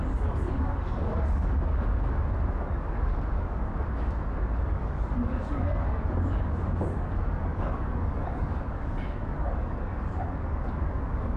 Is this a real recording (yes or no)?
no